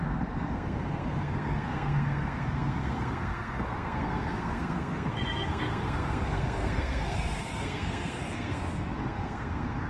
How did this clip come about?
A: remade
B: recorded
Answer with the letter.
A